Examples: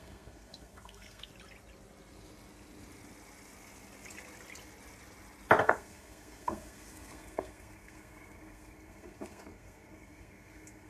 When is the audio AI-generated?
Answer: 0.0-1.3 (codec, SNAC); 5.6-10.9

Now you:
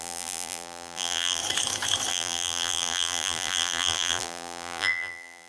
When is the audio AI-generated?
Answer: 0.0-1.4 (vocoder, BigVGAN v2); 2.1-5.5

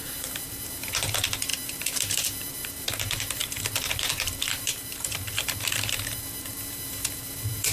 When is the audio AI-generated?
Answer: 0.0-7.7 (vocoder, BigVGAN v2)

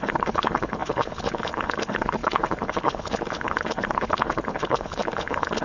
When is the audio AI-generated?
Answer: 0.0-5.6 (codec, HILCodec)

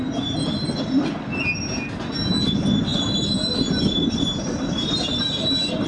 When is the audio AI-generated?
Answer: none